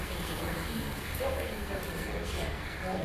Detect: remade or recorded remade